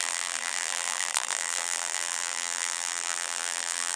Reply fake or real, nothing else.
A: fake